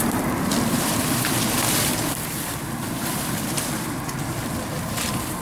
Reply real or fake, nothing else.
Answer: fake